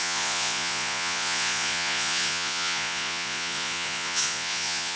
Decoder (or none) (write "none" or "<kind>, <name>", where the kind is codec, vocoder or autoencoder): vocoder, Vocos